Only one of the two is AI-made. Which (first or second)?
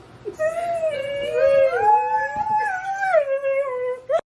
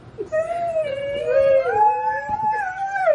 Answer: second